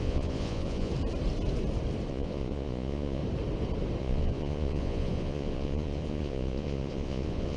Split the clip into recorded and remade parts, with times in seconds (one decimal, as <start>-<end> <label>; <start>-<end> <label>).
0.0-0.9 remade; 0.9-2.1 recorded; 2.1-3.2 remade; 3.2-4.0 recorded; 4.0-7.6 remade